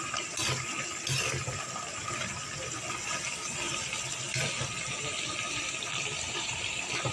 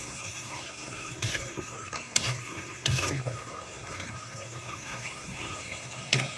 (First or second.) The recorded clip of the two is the first